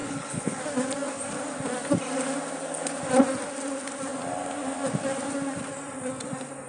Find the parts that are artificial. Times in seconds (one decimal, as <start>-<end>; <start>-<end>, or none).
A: 0.0-0.6